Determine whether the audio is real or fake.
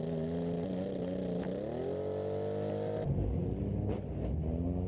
real